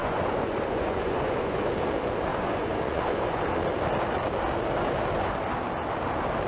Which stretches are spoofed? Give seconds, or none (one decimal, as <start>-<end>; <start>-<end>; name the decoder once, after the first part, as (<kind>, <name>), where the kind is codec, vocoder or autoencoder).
0.0-1.7 (vocoder, Vocos); 2.3-3.4